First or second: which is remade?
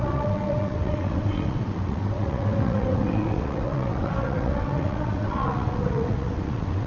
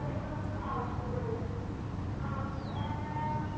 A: first